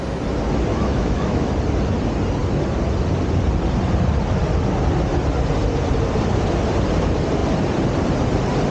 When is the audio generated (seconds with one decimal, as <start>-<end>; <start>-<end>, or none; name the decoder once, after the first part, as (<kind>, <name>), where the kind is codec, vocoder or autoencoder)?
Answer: 0.7-1.5 (autoencoder, DAC-VAE)

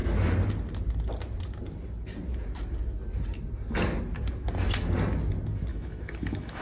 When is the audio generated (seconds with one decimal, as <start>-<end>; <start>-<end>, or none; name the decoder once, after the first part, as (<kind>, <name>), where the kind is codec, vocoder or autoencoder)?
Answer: 5.7-6.6 (autoencoder, DAC-VAE)

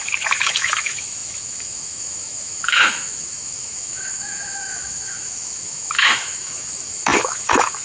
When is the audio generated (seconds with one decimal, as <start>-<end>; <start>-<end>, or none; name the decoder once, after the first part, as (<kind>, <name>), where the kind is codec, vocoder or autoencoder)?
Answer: 0.0-7.8 (autoencoder, DAC-VAE)

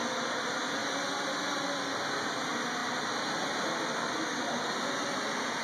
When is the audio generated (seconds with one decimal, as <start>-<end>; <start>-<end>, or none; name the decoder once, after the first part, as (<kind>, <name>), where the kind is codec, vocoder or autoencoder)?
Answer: none

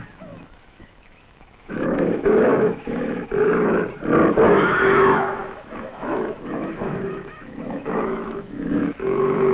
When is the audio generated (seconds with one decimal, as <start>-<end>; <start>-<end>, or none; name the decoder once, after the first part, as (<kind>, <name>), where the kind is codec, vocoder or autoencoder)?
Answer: 0.0-3.3 (autoencoder, DAC-VAE); 4.5-9.5

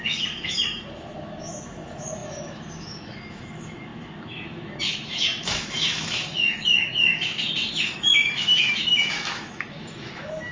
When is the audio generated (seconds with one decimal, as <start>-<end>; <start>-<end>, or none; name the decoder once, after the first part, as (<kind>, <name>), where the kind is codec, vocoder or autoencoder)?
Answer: 0.0-10.5 (autoencoder, DAC-VAE)